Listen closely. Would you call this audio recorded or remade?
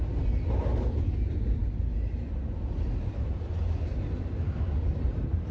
recorded